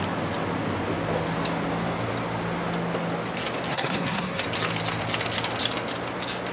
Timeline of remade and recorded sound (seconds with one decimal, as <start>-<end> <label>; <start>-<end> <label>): 0.0-3.7 recorded; 3.7-4.4 remade; 4.4-6.5 recorded